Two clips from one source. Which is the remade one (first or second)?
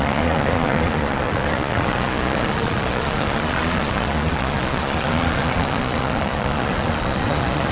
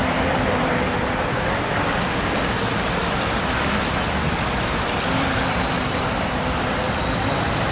first